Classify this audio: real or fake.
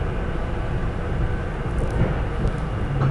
real